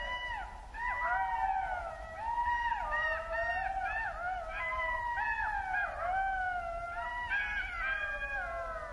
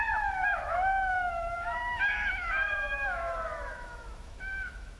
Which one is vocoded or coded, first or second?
second